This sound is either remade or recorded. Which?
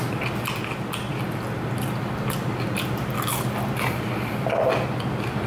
recorded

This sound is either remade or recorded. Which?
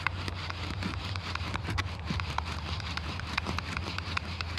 remade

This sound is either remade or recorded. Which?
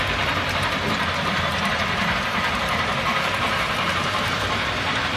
remade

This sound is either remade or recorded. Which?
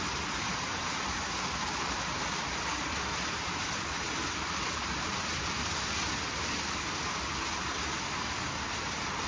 remade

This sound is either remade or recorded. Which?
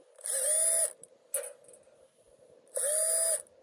recorded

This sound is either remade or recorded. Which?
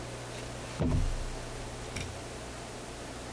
recorded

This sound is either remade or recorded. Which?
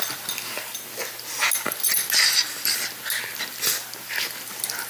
recorded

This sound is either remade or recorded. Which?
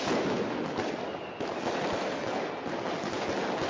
recorded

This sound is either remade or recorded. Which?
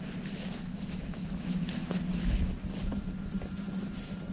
recorded